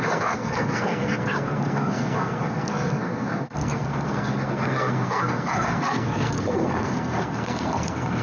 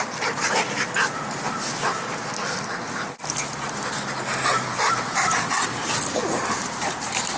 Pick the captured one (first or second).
second